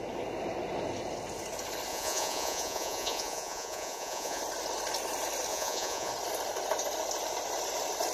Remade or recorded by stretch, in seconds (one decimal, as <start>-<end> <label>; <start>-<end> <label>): 0.0-1.9 recorded; 1.9-4.4 remade; 4.4-5.5 recorded; 5.5-6.1 remade; 6.1-8.1 recorded